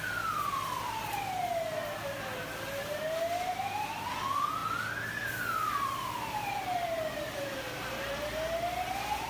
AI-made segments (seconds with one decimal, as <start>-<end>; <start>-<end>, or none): none